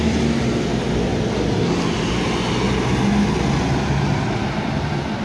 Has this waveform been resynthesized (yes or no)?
no